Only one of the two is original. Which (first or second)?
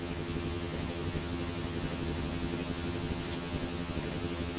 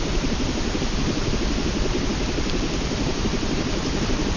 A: second